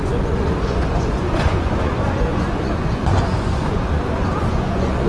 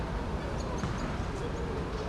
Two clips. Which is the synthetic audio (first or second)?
first